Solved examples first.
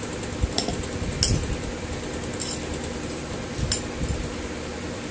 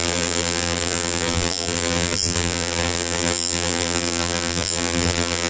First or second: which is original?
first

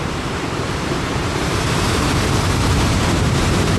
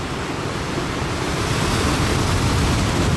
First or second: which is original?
second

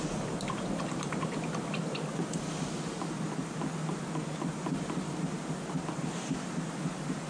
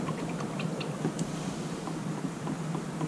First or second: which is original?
first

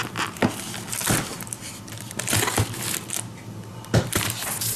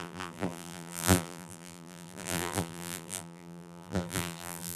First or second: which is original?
first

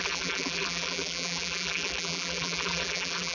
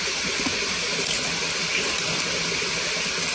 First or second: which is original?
second